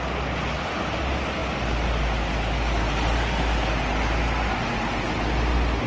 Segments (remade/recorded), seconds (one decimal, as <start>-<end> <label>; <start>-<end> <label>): 0.0-5.9 recorded